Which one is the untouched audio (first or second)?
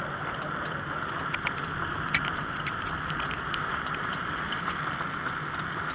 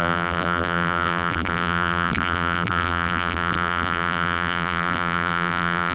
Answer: first